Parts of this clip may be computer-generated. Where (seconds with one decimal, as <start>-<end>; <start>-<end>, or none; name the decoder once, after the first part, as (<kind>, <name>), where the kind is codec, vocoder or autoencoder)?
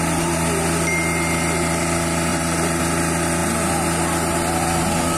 2.3-2.8 (vocoder, BigVGAN v2)